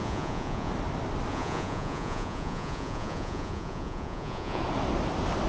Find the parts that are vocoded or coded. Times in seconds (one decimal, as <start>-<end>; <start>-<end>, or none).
0.0-0.7; 1.3-4.6